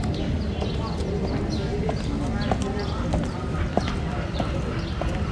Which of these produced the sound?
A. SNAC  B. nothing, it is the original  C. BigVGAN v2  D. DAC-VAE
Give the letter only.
B